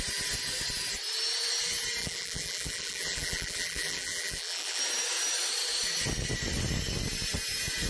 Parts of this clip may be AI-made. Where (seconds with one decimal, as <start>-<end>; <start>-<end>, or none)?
2.0-4.8